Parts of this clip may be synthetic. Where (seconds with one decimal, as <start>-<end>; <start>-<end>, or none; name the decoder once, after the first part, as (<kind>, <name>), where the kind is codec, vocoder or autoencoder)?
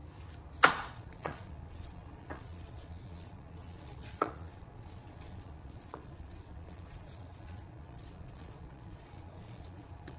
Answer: 0.7-10.2 (vocoder, Vocos)